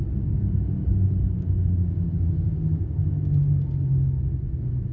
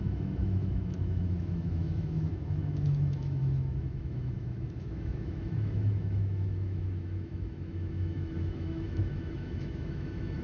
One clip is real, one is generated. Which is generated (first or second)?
second